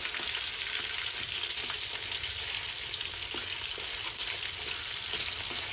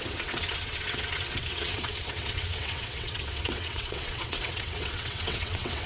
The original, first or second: first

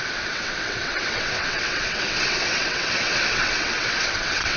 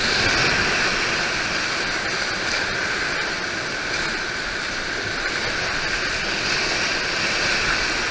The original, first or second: second